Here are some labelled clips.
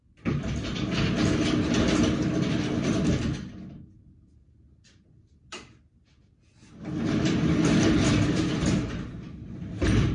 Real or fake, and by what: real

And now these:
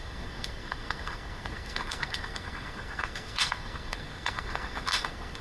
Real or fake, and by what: fake, codec, SNAC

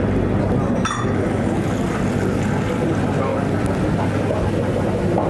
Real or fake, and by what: real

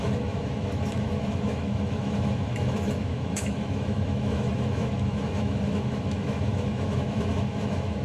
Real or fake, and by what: fake, autoencoder, DAC-VAE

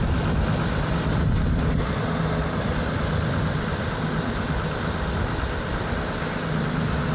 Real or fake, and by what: real